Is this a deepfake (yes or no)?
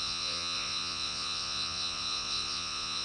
yes